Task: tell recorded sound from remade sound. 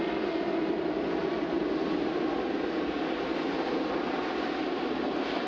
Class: recorded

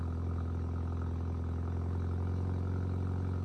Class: recorded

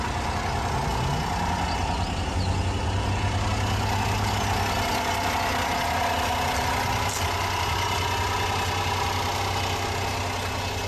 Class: recorded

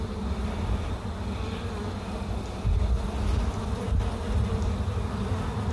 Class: recorded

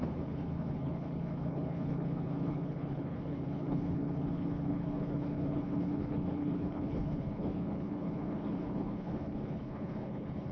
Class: remade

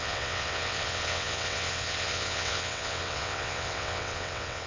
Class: remade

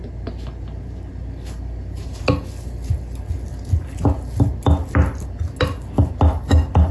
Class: recorded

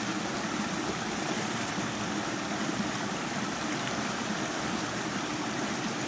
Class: recorded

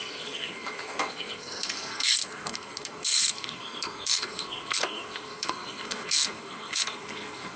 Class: remade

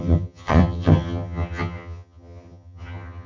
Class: remade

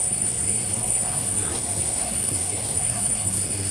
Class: remade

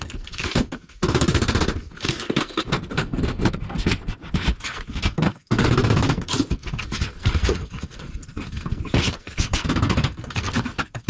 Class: remade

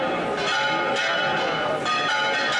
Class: recorded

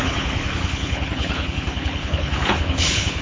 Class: remade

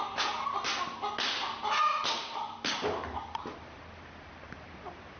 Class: recorded